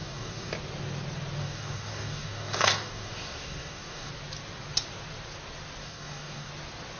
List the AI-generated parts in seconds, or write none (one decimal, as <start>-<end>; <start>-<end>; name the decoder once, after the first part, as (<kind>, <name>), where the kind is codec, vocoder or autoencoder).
0.0-0.5 (codec, DAC); 1.4-4.1; 5.8-6.5